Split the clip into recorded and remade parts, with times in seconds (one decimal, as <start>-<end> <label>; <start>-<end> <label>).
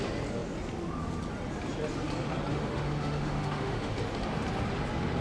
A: 0.0-2.5 recorded; 2.5-4.0 remade; 4.0-5.2 recorded